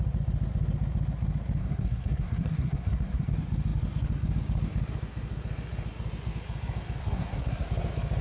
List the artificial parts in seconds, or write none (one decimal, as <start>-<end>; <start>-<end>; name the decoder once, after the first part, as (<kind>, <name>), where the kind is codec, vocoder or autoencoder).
1.6-3.3 (codec, SNAC); 7.0-7.7